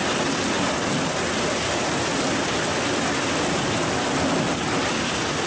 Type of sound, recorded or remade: recorded